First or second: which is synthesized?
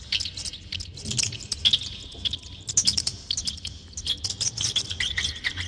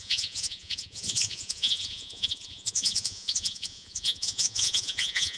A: second